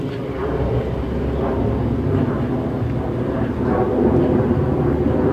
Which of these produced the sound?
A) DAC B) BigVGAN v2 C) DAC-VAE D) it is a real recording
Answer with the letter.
D